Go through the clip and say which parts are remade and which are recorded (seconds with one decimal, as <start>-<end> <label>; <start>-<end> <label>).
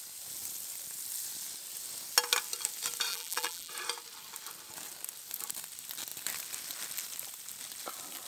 0.0-3.1 recorded; 3.1-3.7 remade; 3.7-8.3 recorded